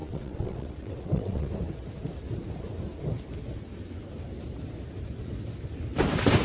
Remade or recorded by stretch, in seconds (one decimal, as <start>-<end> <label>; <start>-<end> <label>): 0.0-1.5 remade; 1.5-6.4 recorded

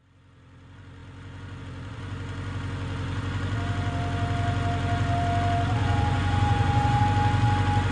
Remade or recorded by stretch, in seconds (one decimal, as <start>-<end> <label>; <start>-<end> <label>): 0.0-5.8 recorded; 5.8-7.0 remade; 7.0-7.9 recorded

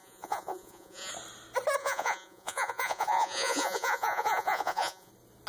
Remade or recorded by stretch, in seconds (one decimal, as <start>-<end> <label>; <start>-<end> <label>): 0.0-1.1 remade; 1.1-1.8 recorded; 1.8-5.1 remade; 5.1-5.5 recorded

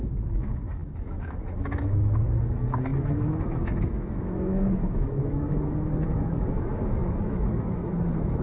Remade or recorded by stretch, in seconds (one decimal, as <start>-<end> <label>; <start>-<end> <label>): 0.0-8.4 remade

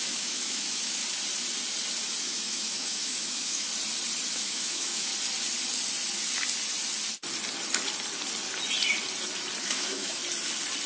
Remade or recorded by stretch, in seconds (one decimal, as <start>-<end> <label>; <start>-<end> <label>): 0.0-1.0 remade; 1.0-2.2 recorded; 2.2-3.7 remade; 3.7-4.3 recorded; 4.3-5.1 remade; 5.1-9.6 recorded; 9.6-10.2 remade; 10.2-10.9 recorded

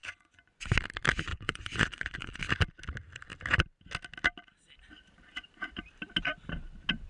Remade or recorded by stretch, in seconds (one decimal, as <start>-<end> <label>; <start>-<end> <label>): 0.0-0.7 remade; 0.7-1.3 recorded; 1.3-2.4 remade; 2.4-7.1 recorded